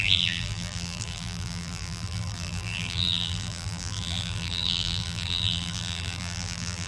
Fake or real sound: fake